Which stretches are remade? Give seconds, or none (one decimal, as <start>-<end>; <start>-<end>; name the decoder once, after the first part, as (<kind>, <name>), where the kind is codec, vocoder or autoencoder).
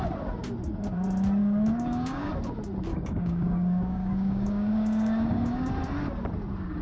1.4-2.3 (codec, DAC); 2.9-5.7